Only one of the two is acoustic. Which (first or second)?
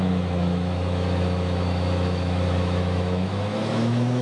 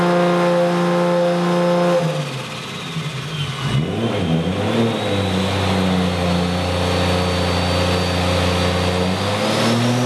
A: second